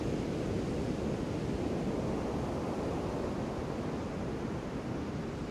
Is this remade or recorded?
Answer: recorded